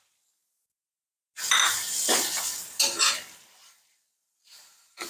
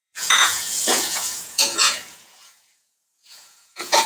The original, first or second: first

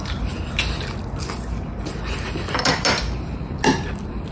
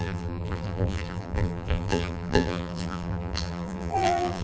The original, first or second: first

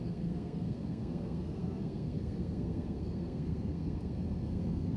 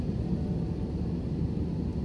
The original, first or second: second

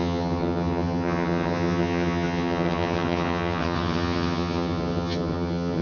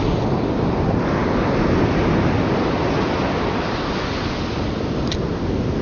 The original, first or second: second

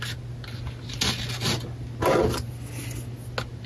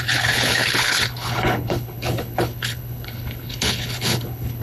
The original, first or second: first